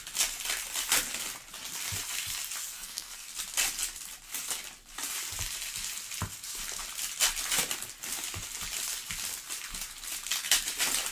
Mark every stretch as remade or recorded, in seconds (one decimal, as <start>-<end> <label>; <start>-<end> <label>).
0.0-2.6 recorded; 2.6-3.3 remade; 3.3-11.1 recorded